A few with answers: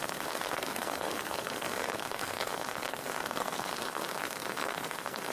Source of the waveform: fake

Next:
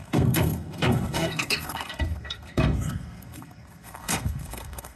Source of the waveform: fake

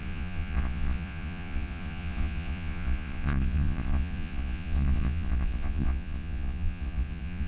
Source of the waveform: fake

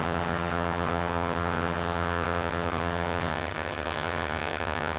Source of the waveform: fake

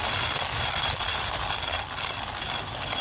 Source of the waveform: real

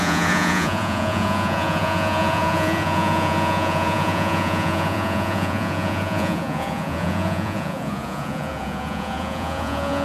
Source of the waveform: fake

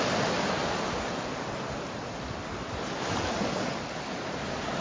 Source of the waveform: real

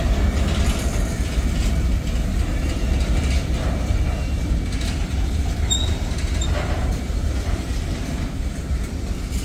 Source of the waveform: real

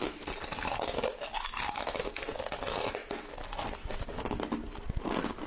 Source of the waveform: real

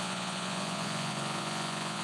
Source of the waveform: fake